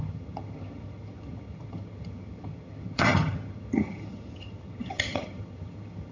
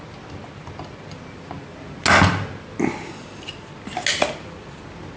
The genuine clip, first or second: second